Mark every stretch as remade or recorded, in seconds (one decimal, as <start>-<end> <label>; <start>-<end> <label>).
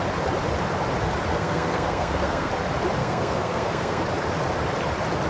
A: 0.0-1.3 recorded; 1.3-2.5 remade; 2.5-3.0 recorded; 3.0-4.0 remade; 4.0-5.3 recorded